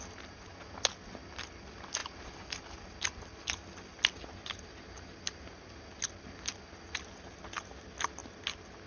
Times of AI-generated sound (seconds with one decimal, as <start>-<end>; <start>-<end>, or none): none